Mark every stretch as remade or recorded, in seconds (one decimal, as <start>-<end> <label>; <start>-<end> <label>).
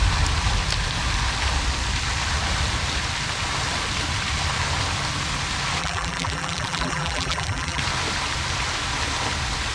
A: 0.0-5.8 recorded; 5.8-7.8 remade; 7.8-9.7 recorded